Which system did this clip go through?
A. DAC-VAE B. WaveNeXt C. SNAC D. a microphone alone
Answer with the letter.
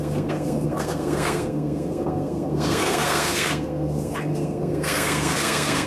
C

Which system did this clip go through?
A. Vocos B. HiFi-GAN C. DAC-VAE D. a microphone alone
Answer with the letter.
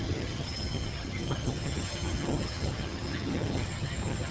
B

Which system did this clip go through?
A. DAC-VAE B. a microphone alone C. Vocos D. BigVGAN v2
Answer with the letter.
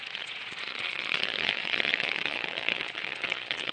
C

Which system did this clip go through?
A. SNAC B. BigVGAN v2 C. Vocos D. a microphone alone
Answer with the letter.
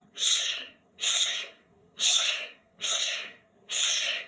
A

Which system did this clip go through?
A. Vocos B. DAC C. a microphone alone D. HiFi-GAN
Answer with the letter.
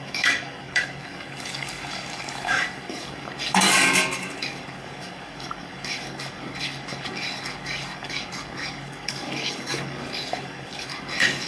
B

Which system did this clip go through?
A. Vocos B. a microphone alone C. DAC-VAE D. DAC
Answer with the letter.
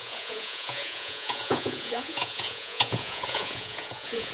A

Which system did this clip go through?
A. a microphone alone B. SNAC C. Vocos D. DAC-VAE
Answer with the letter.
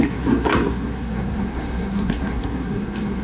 B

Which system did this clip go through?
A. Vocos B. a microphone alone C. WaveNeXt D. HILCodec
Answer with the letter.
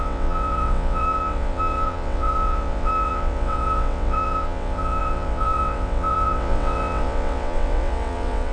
C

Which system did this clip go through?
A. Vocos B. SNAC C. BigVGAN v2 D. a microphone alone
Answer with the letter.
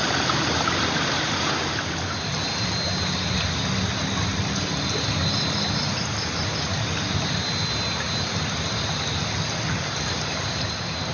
D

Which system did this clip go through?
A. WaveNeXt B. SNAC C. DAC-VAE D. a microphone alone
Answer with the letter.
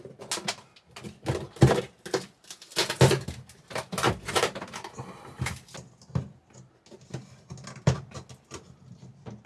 D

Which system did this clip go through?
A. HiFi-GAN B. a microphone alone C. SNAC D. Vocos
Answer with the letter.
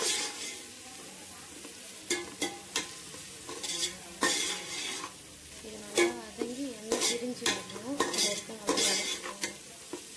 B